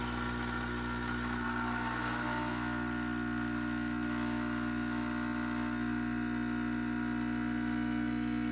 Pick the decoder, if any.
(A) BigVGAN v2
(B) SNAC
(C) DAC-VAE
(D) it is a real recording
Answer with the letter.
D